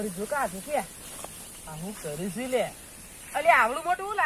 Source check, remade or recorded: recorded